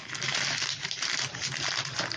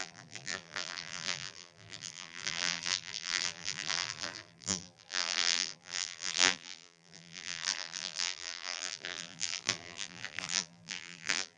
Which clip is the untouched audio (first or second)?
first